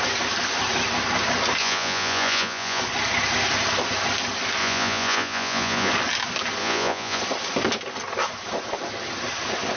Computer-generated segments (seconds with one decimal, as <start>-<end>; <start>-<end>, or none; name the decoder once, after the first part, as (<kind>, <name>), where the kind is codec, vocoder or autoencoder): 1.6-2.8 (vocoder, Vocos); 4.6-5.9; 6.6-7.2